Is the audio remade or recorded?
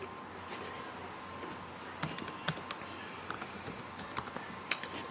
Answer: recorded